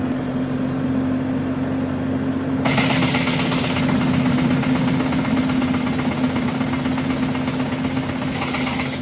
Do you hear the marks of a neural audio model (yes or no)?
no